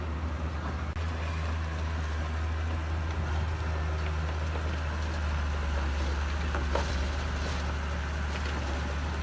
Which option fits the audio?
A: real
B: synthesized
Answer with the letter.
A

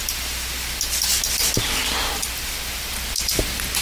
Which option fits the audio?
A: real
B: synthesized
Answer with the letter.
A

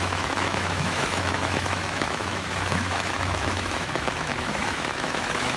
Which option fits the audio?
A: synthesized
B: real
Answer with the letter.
A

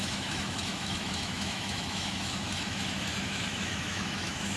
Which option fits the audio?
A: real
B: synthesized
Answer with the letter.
B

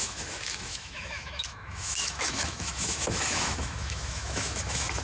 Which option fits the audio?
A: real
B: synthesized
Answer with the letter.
B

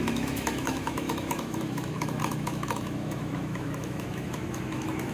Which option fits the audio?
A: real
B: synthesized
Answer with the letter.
B